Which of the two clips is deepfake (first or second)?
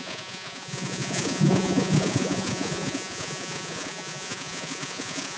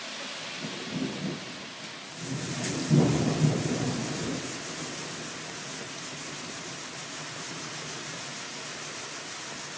first